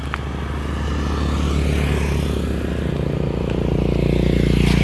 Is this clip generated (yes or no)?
no